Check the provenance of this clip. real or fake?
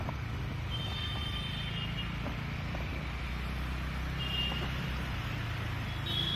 real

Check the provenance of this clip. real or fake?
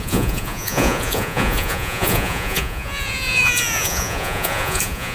fake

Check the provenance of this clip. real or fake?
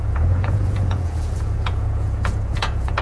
fake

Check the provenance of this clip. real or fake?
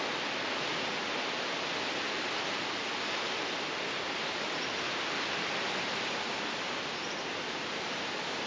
real